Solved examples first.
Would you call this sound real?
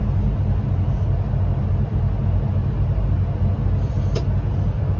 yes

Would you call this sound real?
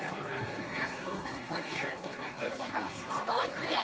no